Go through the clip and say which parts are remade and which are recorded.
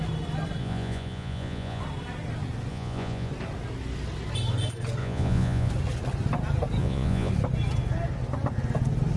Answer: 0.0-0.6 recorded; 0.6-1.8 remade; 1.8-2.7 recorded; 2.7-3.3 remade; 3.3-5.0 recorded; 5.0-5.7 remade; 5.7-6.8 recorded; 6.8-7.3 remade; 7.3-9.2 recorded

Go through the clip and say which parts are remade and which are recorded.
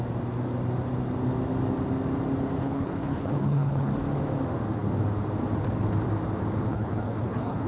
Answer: 0.0-2.6 recorded; 2.6-3.9 remade; 3.9-6.7 recorded; 6.7-7.7 remade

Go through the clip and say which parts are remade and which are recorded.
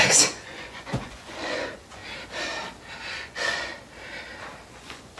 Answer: 0.0-2.0 remade; 2.0-3.1 recorded; 3.1-3.7 remade; 3.7-4.7 recorded; 4.7-5.2 remade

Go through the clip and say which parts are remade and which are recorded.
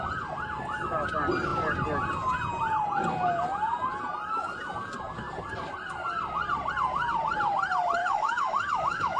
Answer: 0.0-8.0 recorded; 8.0-9.2 remade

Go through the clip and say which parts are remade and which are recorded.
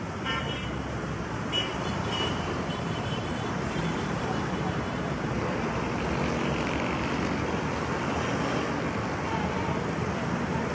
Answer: 0.0-1.7 recorded; 1.7-5.9 remade; 5.9-10.7 recorded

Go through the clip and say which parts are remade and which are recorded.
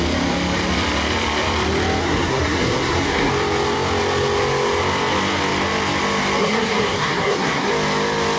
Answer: 0.0-2.0 recorded; 2.0-3.3 remade; 3.3-6.4 recorded; 6.4-7.7 remade; 7.7-8.4 recorded